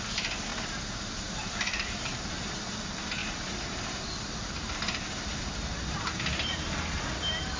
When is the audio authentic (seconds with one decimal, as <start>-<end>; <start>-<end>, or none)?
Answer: 0.0-0.5; 2.7-3.2; 5.4-7.6